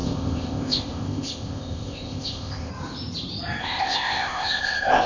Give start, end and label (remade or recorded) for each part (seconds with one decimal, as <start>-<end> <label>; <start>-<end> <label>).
0.0-2.7 remade; 2.7-3.6 recorded; 3.6-5.1 remade